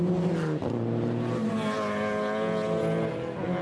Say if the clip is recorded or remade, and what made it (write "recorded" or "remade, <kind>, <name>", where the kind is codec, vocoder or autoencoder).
recorded